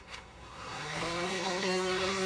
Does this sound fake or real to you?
fake